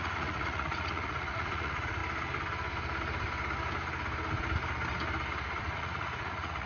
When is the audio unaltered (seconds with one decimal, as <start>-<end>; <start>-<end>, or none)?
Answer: 2.0-5.6